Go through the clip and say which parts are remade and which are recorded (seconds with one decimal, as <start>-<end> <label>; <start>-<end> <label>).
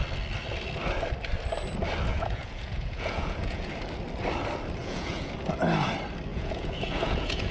0.0-2.1 recorded; 2.1-3.7 remade; 3.7-4.8 recorded; 4.8-5.3 remade; 5.3-6.3 recorded; 6.3-7.5 remade